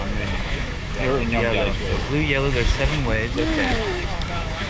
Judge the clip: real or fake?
fake